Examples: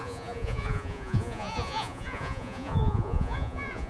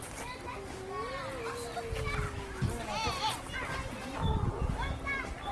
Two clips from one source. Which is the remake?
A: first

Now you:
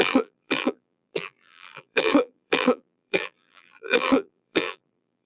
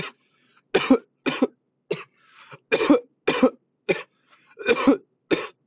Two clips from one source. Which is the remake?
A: first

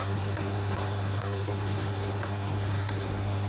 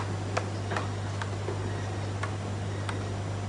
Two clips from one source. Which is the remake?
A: first